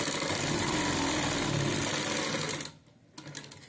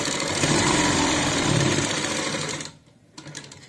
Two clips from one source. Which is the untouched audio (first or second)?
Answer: first